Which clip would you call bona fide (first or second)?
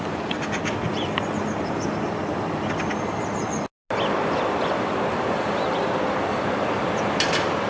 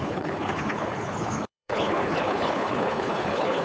first